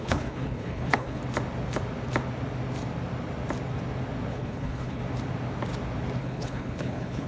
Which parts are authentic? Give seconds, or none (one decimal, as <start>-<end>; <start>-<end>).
1.2-4.3; 5.0-6.2